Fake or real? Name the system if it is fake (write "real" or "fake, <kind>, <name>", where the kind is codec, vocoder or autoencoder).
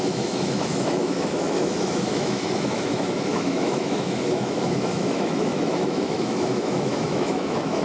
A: fake, autoencoder, DAC-VAE